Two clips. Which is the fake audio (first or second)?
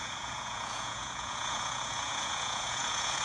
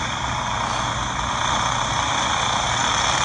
first